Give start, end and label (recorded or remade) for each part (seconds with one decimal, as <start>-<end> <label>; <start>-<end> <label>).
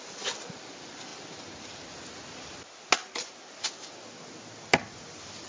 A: 0.0-5.5 recorded